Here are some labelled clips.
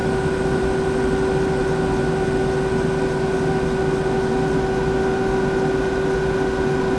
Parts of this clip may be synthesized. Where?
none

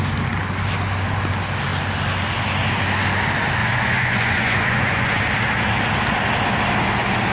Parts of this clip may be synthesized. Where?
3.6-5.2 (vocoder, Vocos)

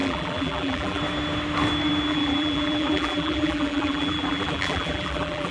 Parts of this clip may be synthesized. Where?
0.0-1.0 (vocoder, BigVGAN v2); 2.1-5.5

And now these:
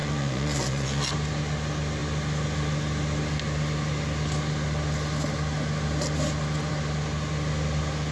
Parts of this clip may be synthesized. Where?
0.0-1.1 (vocoder, Vocos)

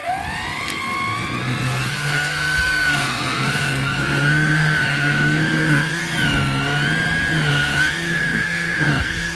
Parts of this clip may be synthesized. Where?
1.9-6.0 (codec, SNAC); 7.5-9.3

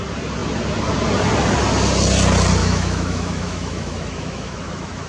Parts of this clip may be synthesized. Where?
2.6-5.1 (autoencoder, DAC-VAE)

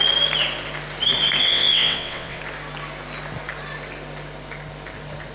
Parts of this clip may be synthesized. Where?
1.4-2.4 (vocoder, WaveNeXt)

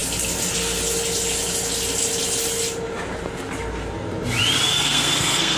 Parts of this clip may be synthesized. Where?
4.7-5.6 (codec, SNAC)